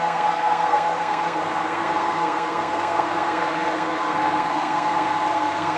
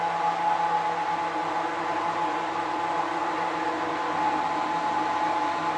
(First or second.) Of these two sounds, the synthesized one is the first